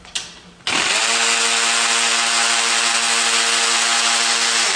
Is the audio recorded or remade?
recorded